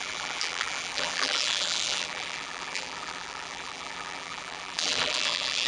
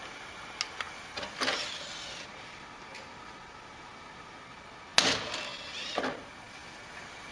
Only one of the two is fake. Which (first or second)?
first